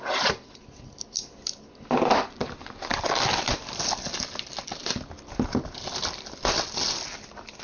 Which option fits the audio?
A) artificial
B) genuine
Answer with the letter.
B